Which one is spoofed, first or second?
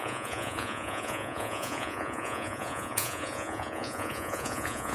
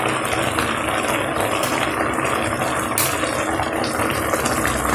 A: first